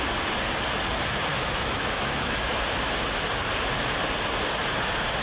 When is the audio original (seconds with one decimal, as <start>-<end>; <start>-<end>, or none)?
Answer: 0.0-1.3; 2.5-5.2